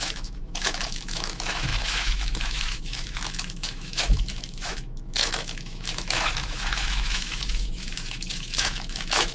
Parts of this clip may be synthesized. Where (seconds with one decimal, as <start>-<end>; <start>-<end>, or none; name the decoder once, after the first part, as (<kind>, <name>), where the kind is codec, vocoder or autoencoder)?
0.0-9.3 (autoencoder, DAC-VAE)